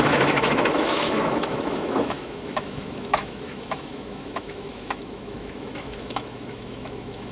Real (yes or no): no